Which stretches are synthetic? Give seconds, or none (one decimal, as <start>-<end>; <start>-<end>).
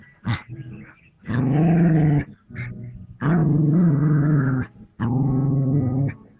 0.0-1.4; 3.4-5.0